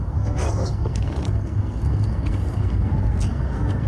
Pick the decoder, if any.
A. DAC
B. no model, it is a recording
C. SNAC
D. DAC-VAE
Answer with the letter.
C